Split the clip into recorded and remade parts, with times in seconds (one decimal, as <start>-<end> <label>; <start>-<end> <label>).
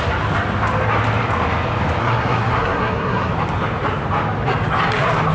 0.0-2.0 recorded; 2.0-3.3 remade; 3.3-5.3 recorded